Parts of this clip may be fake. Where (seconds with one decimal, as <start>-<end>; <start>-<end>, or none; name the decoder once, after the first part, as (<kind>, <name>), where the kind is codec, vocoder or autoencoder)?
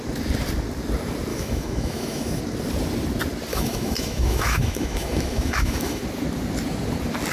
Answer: 1.3-2.4 (autoencoder, DAC-VAE); 3.5-6.0